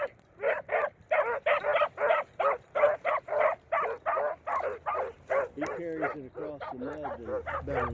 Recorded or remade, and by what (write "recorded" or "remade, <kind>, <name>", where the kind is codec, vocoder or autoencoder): recorded